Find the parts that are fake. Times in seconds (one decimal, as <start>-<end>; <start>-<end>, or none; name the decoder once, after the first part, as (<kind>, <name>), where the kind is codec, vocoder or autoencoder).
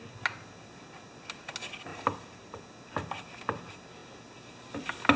1.9-2.6 (vocoder, BigVGAN v2)